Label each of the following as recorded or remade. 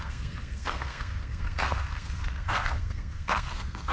remade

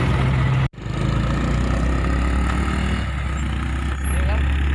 recorded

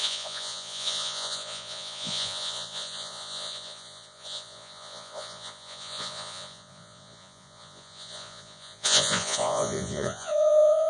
remade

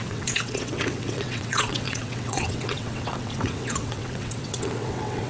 remade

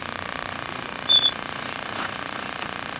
remade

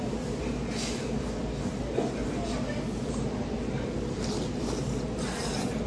recorded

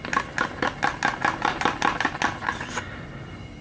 recorded